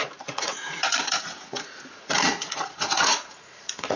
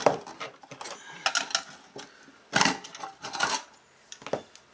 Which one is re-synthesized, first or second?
first